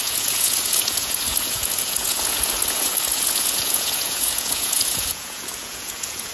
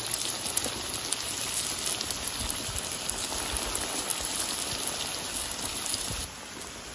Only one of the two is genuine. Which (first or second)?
second